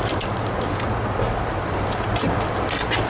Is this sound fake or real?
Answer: real